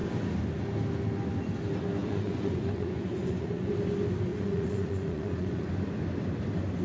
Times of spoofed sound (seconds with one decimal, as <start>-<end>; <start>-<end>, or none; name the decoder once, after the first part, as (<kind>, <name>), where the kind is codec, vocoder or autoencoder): 2.0-3.7 (vocoder, Vocos); 4.3-5.7